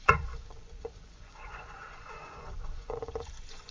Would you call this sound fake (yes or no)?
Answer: yes